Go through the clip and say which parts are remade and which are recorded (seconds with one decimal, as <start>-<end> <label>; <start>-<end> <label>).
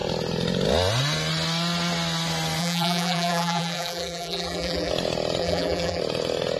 0.0-2.6 recorded; 2.6-4.9 remade; 4.9-5.4 recorded; 5.4-6.0 remade; 6.0-6.6 recorded